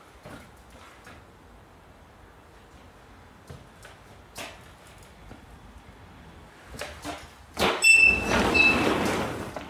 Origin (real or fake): real